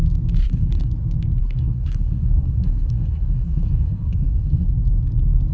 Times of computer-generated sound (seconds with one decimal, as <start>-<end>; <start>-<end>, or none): 0.4-0.9; 1.4-4.7